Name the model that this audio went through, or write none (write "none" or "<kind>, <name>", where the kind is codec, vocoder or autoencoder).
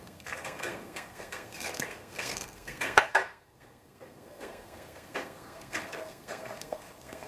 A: codec, SNAC